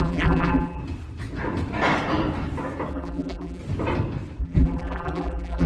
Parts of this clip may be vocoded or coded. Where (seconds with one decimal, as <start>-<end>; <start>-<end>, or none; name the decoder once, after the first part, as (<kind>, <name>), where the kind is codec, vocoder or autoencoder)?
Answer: 0.0-0.8 (vocoder, BigVGAN v2); 2.9-3.6; 4.4-5.7